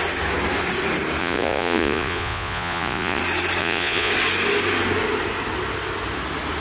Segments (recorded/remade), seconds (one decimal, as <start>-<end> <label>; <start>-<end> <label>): 0.0-1.2 recorded; 1.2-3.2 remade; 3.2-3.6 recorded; 3.6-4.1 remade; 4.1-6.6 recorded